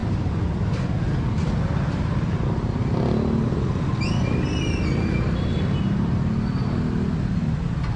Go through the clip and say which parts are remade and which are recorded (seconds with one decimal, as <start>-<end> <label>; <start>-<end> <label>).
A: 0.0-8.0 recorded